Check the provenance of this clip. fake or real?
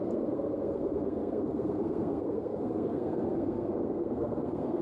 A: fake